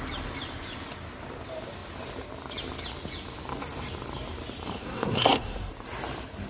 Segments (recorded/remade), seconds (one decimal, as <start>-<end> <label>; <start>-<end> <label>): 0.0-4.8 recorded; 4.8-5.7 remade; 5.7-6.5 recorded